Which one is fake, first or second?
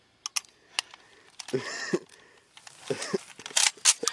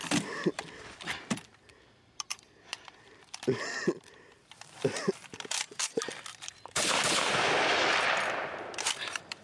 second